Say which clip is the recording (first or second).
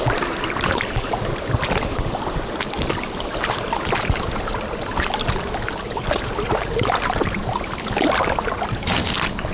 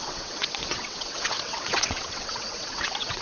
first